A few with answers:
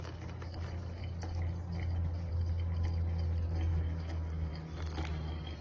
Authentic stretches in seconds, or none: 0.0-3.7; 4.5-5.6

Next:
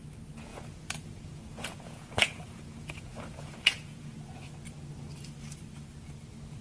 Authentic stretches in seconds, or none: 0.0-0.5; 4.5-6.6

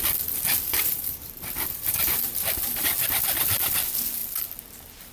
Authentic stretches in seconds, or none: 2.2-5.1